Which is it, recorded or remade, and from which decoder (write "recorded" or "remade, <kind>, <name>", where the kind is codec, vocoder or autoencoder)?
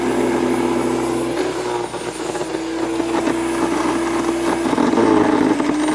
recorded